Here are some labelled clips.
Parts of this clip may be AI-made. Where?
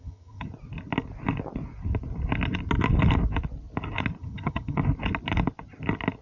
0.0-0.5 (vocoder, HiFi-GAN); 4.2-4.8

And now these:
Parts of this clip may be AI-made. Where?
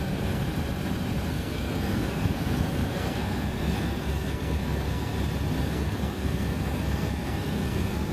0.0-0.4 (codec, SNAC); 1.3-5.1; 5.6-8.1